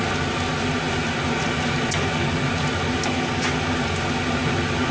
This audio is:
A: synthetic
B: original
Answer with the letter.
B